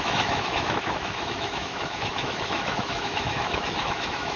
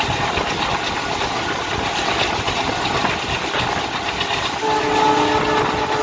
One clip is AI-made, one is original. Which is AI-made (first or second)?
first